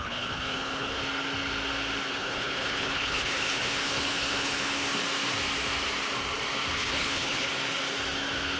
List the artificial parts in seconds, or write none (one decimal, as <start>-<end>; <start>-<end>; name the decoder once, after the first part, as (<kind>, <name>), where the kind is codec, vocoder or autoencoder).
0.0-1.0 (codec, HILCodec); 2.1-4.9; 6.7-7.5